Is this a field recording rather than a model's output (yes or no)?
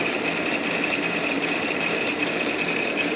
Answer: no